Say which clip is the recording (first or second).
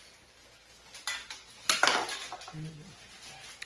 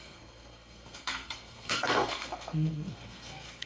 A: first